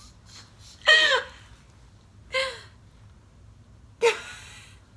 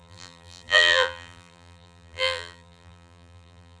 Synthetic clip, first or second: second